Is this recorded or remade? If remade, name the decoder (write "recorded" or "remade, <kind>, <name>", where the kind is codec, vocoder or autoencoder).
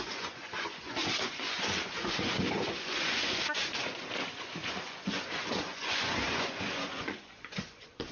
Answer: remade, vocoder, Vocos